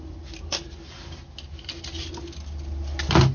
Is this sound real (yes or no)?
yes